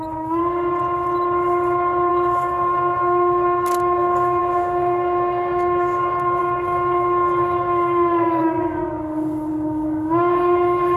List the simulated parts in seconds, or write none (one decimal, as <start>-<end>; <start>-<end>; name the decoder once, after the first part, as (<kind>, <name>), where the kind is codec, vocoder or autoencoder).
0.0-0.4 (codec, DAC); 2.1-11.0